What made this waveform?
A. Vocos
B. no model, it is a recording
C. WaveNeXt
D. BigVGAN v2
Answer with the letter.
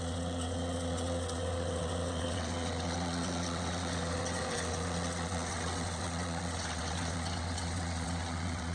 C